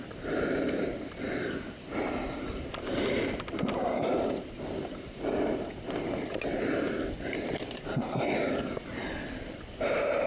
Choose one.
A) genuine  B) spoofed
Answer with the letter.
A